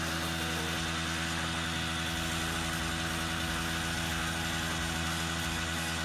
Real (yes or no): yes